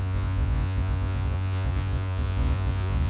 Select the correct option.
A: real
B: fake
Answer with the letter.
B